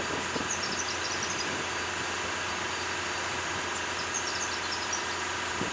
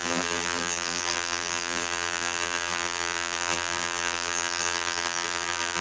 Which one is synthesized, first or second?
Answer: second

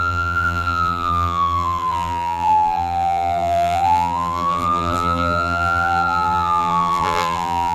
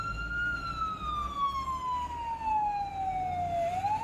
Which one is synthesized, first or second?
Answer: first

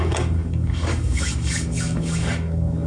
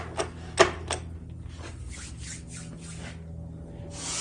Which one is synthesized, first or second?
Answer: first